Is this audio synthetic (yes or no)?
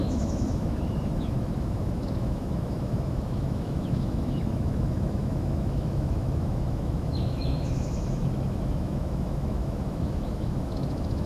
yes